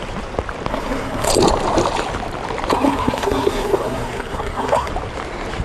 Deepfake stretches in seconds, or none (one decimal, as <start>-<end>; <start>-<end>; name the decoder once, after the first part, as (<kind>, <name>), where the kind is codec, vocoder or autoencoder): 0.7-1.3 (codec, SNAC); 2.7-4.9